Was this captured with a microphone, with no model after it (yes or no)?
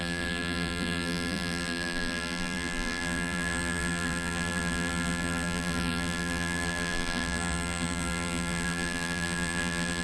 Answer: no